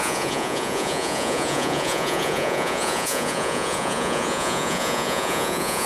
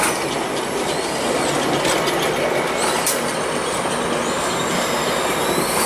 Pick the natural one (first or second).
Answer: second